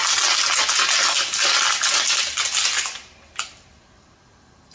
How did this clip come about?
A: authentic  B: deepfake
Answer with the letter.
A